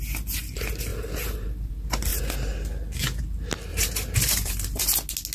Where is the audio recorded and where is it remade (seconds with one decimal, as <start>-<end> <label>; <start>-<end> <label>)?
0.0-0.9 recorded; 0.9-1.7 remade; 1.7-3.7 recorded; 3.7-4.8 remade; 4.8-5.3 recorded